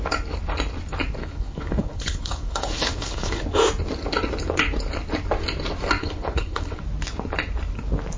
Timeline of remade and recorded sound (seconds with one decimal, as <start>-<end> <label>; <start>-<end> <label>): 0.0-1.2 recorded; 1.2-3.4 remade; 3.4-6.0 recorded; 6.0-6.8 remade; 6.8-8.2 recorded